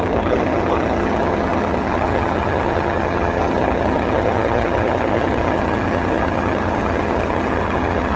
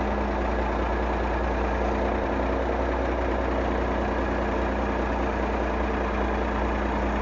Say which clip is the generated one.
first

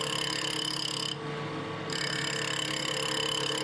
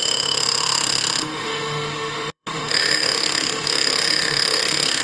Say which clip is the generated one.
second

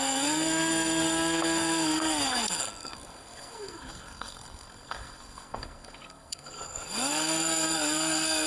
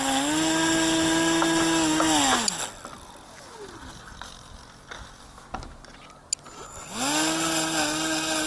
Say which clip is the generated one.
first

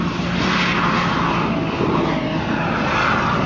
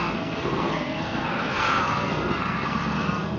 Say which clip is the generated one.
second